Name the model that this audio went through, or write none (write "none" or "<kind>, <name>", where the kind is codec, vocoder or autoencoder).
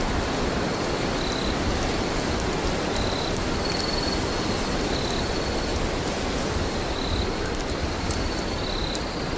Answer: none